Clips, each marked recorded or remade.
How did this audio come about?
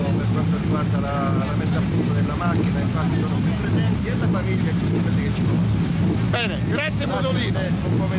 recorded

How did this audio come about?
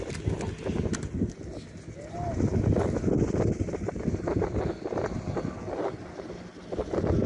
recorded